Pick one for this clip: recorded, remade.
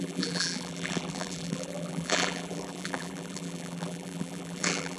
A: remade